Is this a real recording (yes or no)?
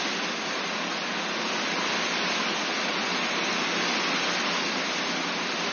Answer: yes